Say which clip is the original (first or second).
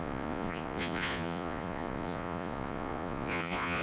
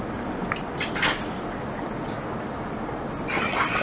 second